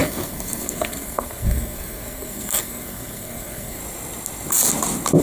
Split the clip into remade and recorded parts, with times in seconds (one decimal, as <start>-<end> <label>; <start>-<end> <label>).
0.0-3.8 remade; 3.8-5.2 recorded